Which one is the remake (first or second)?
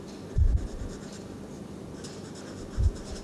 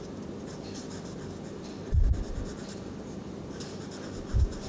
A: second